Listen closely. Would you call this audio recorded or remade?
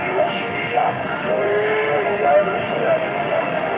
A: remade